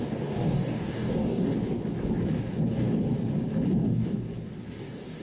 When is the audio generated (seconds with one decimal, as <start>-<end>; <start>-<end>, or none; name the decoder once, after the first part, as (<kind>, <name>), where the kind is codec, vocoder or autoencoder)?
0.0-1.5 (codec, DAC); 3.8-4.3; 4.8-5.2